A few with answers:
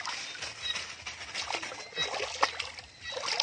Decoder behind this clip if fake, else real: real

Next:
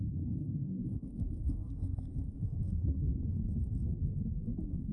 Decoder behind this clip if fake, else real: fake, codec, SNAC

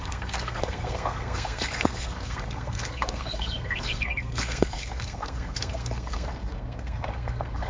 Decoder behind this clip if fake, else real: fake, codec, SNAC